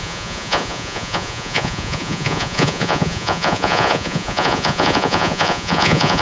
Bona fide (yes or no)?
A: no